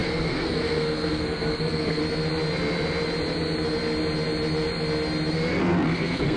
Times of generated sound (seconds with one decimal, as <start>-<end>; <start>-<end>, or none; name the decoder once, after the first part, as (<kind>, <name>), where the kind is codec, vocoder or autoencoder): 0.0-2.0 (codec, SNAC); 5.6-6.4